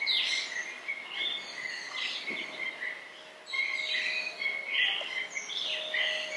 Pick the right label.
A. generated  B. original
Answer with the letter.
B